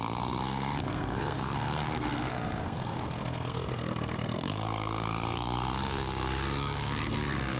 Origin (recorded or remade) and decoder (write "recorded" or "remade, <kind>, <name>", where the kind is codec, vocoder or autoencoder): remade, codec, SNAC